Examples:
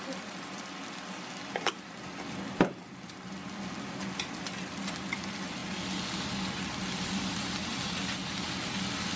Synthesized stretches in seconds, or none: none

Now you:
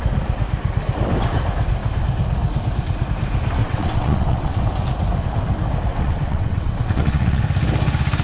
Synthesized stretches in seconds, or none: 3.6-4.6 (vocoder, WaveNeXt); 5.9-7.4

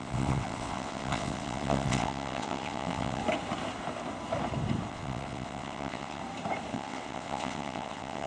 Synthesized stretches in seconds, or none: 0.0-3.2 (vocoder, WaveNeXt); 4.9-6.2; 6.7-8.3

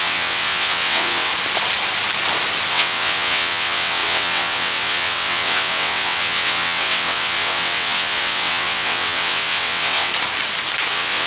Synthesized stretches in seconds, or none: 0.0-1.3 (vocoder, WaveNeXt); 2.7-10.1; 10.9-11.3

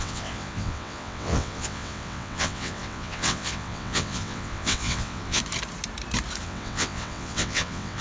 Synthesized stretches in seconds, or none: 0.0-5.4 (vocoder, WaveNeXt); 6.4-8.0